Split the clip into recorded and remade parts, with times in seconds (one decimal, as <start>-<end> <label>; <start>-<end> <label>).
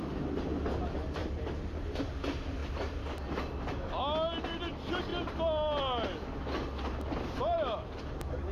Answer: 0.0-1.2 recorded; 1.2-1.9 remade; 1.9-8.5 recorded